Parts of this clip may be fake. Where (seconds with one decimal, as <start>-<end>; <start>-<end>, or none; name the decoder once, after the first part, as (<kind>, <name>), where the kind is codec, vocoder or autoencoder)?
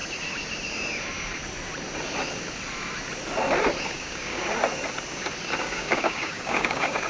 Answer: 3.8-4.4 (codec, DAC); 5.6-7.1